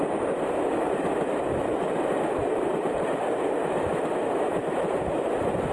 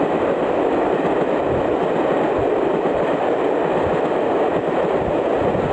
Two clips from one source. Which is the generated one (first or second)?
first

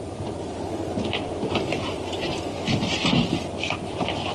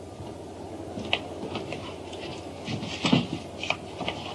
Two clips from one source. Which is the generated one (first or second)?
first